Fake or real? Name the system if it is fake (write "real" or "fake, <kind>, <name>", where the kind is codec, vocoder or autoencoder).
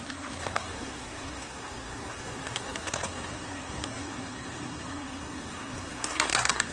fake, codec, SNAC